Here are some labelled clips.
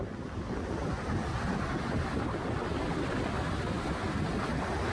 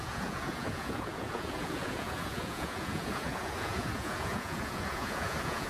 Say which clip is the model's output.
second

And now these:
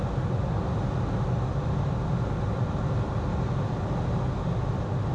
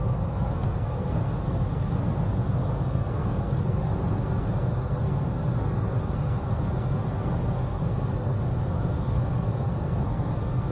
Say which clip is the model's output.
second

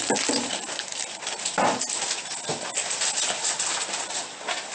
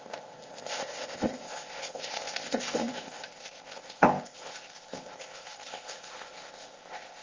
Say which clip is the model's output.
second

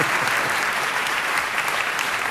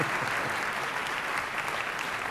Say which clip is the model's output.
first